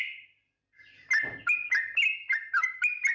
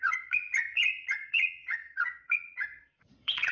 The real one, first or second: first